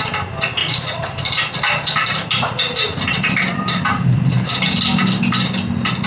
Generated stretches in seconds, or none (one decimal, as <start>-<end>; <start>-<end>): 0.6-4.3

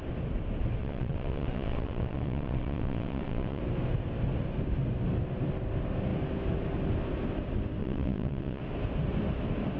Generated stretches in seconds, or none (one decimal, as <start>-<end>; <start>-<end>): 0.8-3.6; 7.8-8.6

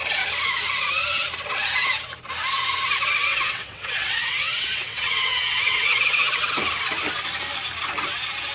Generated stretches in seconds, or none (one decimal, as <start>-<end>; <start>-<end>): 3.3-6.5

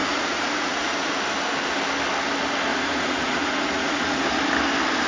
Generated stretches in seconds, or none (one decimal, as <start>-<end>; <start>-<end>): 0.0-1.1; 2.7-4.2